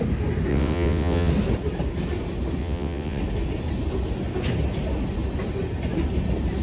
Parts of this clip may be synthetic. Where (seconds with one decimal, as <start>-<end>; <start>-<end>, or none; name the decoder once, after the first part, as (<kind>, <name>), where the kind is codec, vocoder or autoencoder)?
0.5-1.3 (vocoder, WaveNeXt); 2.6-3.2